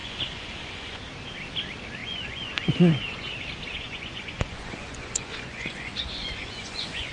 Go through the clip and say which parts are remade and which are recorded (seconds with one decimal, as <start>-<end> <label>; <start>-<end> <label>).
0.0-1.0 remade; 1.0-2.0 recorded; 2.0-3.3 remade; 3.3-3.7 recorded; 3.7-7.1 remade